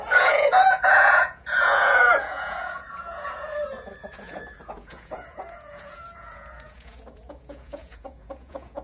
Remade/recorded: remade